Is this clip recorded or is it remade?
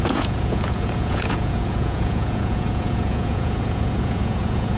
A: remade